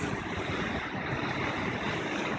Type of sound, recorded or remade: remade